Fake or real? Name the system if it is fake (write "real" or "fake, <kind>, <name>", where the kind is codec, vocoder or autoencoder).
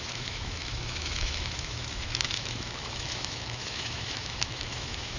fake, autoencoder, DAC-VAE